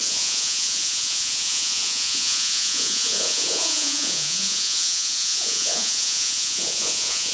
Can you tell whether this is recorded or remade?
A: remade